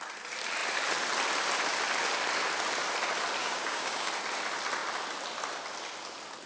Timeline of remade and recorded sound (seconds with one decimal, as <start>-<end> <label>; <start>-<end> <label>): 0.0-3.4 recorded; 3.4-4.1 remade; 4.1-6.5 recorded